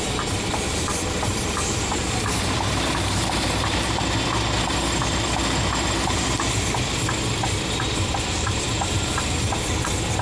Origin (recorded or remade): remade